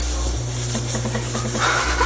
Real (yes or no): yes